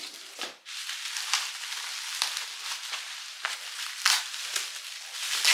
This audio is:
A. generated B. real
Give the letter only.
B